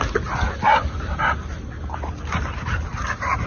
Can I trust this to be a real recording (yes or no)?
yes